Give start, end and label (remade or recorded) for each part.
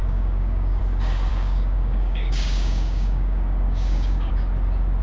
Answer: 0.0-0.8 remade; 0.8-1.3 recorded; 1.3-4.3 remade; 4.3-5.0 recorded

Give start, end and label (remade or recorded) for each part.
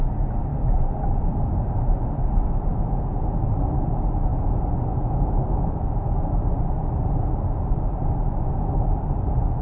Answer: 0.0-9.6 recorded